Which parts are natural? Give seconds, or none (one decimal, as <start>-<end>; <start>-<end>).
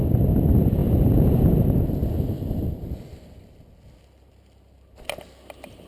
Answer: 0.0-5.9